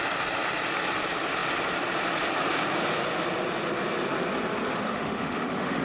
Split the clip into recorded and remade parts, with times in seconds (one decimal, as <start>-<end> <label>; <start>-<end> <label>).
0.0-4.7 recorded; 4.7-5.8 remade